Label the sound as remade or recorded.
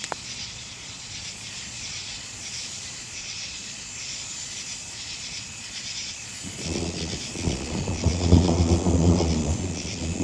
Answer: remade